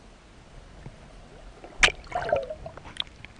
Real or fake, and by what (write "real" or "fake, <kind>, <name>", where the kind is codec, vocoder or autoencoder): real